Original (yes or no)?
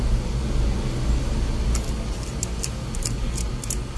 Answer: yes